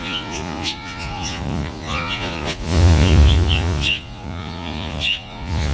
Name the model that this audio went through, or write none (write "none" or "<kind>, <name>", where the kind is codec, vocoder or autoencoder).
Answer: vocoder, Vocos